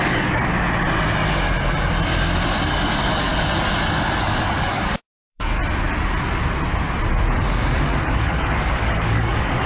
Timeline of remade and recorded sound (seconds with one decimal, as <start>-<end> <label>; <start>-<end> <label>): 0.0-0.5 remade; 0.5-2.7 recorded; 2.7-3.3 remade; 3.3-4.2 recorded; 4.2-5.6 remade; 5.6-7.4 recorded; 7.4-9.7 remade